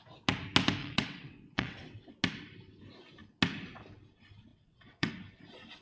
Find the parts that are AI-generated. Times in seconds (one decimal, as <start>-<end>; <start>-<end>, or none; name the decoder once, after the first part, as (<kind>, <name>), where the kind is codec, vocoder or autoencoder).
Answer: 0.8-2.1 (vocoder, WaveNeXt); 4.5-5.1